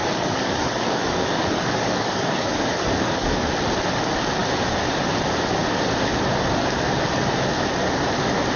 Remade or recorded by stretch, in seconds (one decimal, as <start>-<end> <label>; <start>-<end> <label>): 0.0-3.5 remade; 3.5-8.6 recorded